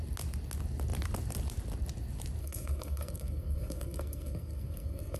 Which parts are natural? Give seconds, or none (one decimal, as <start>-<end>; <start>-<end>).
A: 0.0-2.4